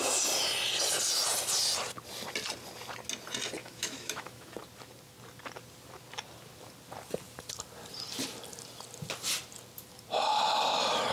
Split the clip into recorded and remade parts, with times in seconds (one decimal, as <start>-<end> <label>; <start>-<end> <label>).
0.0-3.6 recorded; 3.6-4.5 remade; 4.5-11.1 recorded